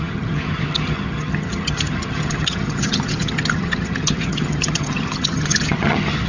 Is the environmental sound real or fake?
fake